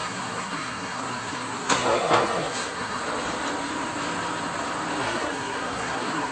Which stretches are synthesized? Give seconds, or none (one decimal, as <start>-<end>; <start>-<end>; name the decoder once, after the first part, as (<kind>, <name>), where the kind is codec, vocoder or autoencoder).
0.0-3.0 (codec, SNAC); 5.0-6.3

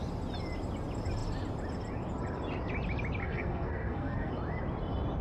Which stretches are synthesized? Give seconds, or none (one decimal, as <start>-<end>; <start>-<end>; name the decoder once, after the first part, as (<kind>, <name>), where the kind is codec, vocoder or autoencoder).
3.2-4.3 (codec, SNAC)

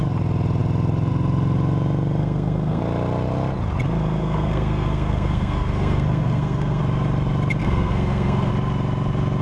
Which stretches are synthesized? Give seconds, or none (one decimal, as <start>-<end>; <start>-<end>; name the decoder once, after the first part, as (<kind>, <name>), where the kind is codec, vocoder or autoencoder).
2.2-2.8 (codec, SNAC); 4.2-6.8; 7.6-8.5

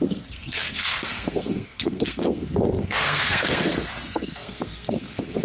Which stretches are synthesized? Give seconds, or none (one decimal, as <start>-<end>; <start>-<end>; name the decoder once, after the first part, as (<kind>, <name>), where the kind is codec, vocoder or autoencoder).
0.0-5.4 (codec, SNAC)

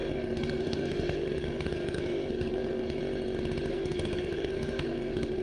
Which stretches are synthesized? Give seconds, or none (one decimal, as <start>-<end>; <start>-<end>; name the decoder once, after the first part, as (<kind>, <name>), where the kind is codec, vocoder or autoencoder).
0.0-3.0 (codec, SNAC); 3.7-5.4

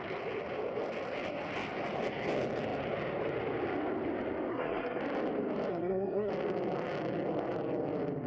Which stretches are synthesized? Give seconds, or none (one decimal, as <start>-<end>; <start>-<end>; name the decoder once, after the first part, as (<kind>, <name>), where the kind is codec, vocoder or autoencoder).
4.5-5.0 (codec, SNAC); 5.7-6.3